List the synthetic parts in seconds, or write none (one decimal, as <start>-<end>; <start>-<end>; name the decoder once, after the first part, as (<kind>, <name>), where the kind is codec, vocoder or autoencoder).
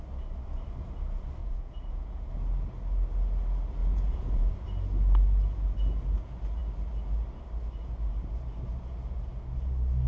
1.4-2.3 (vocoder, Vocos); 3.8-4.5